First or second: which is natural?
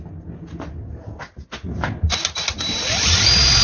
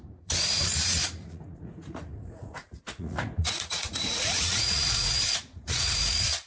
first